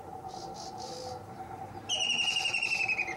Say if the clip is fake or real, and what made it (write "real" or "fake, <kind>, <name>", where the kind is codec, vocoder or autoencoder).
fake, vocoder, BigVGAN v2